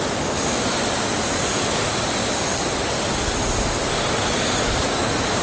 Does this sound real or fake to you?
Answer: real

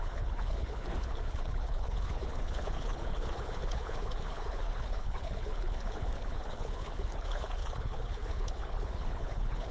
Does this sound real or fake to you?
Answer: fake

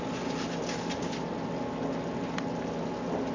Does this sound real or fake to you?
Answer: real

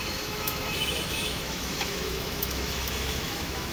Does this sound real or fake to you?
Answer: fake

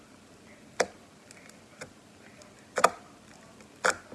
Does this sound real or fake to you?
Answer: real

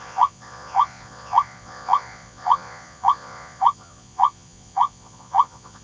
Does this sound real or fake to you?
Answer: fake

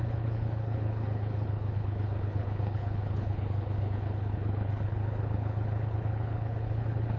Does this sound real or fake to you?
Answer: fake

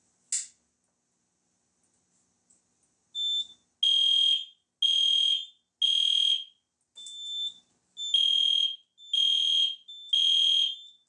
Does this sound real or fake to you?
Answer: real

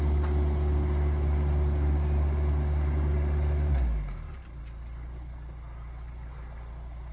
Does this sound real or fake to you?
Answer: real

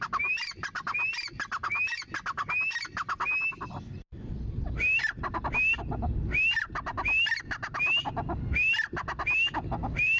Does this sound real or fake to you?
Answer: real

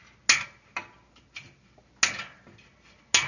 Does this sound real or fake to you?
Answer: real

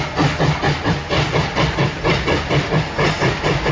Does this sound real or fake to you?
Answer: real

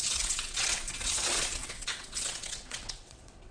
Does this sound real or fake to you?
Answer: fake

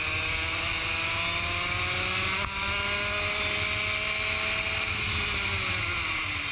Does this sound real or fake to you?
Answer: real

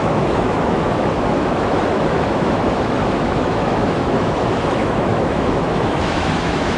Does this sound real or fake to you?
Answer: fake